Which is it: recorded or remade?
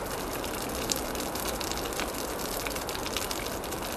recorded